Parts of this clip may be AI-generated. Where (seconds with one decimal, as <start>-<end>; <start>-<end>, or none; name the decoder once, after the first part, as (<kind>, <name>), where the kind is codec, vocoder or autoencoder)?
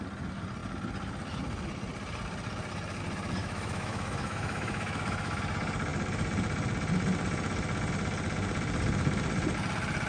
3.4-5.4 (autoencoder, DAC-VAE)